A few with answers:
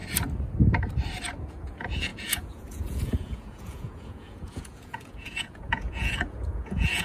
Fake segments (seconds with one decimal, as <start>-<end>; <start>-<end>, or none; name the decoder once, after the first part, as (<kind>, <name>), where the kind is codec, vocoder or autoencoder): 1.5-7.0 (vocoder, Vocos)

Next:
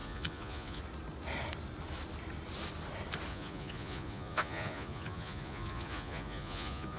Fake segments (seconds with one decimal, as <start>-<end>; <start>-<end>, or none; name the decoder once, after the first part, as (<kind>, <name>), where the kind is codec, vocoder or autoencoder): 0.0-0.8 (vocoder, Vocos); 3.3-7.0

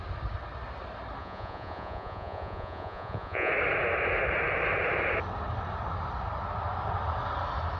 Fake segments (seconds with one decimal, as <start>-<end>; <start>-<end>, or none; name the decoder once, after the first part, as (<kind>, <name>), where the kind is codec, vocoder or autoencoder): 1.2-3.5 (vocoder, Vocos)

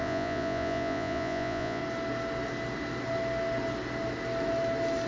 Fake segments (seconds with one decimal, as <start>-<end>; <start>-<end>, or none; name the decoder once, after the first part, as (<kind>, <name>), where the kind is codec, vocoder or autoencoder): 0.0-1.8 (vocoder, Vocos)

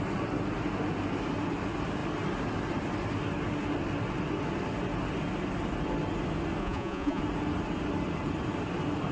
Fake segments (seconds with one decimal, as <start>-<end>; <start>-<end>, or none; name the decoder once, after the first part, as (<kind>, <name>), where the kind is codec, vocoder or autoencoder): 6.6-7.2 (vocoder, Vocos)

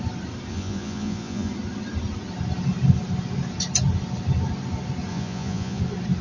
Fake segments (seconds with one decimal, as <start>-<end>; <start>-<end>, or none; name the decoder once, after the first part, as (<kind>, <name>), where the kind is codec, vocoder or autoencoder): 0.5-1.5 (vocoder, Vocos); 5.1-5.8

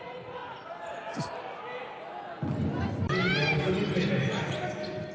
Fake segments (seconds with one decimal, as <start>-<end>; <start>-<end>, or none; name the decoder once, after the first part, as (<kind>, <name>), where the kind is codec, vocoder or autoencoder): none